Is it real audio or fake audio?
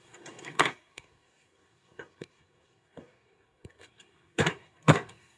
fake